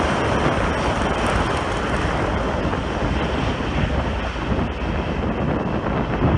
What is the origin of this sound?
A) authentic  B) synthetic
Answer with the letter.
A